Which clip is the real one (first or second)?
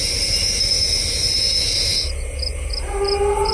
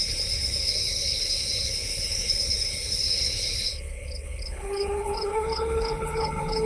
first